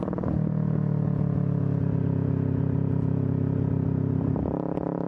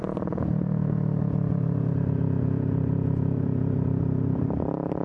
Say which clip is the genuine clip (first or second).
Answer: first